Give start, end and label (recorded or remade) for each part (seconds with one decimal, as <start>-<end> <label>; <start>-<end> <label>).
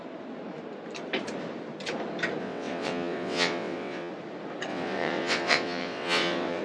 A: 0.0-2.4 recorded; 2.4-4.1 remade; 4.1-4.7 recorded; 4.7-6.6 remade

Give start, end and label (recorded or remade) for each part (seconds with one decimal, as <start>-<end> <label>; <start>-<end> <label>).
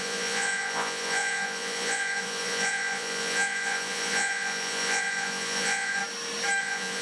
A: 0.0-6.0 remade; 6.0-6.6 recorded; 6.6-7.0 remade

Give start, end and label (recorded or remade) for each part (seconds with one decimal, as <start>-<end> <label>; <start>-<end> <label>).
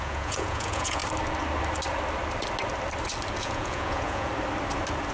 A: 0.0-1.0 remade; 1.0-3.4 recorded; 3.4-4.3 remade; 4.3-5.1 recorded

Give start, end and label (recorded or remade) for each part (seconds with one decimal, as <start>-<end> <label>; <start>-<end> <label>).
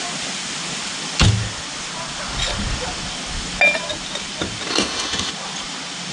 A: 0.0-4.7 recorded; 4.7-5.3 remade; 5.3-6.1 recorded